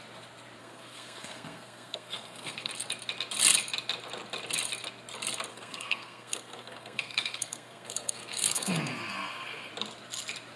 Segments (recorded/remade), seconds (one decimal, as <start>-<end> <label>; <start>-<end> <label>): 0.0-0.6 recorded; 0.6-2.7 remade; 2.7-5.5 recorded; 5.5-9.7 remade; 9.7-10.6 recorded